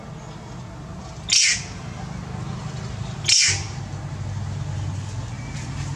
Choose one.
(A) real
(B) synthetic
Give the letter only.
A